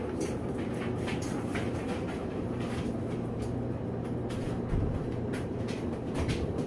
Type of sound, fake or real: fake